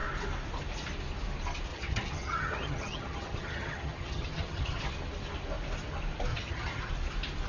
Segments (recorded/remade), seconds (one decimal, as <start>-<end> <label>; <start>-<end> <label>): 0.0-1.7 recorded; 1.7-4.9 remade; 4.9-6.3 recorded; 6.3-6.9 remade; 6.9-7.5 recorded